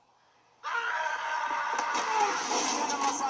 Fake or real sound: real